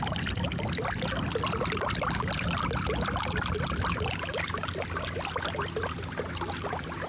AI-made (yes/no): no